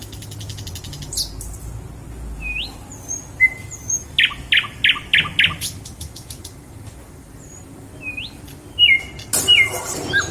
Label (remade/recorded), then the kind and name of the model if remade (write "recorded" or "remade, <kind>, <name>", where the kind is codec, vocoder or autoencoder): recorded